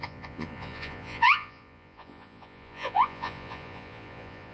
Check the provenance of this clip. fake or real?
fake